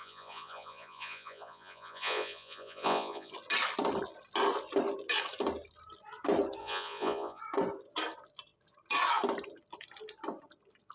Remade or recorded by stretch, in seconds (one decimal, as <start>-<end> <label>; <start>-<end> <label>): 0.0-3.3 remade; 3.3-6.6 recorded; 6.6-7.4 remade; 7.4-10.9 recorded